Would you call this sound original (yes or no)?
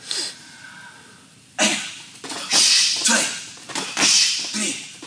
yes